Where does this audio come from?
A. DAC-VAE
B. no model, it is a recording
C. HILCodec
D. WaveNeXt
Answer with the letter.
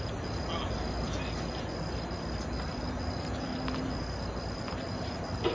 B